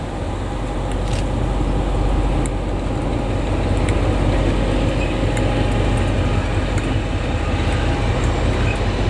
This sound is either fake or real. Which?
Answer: real